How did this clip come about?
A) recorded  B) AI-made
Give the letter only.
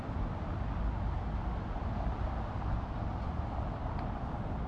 A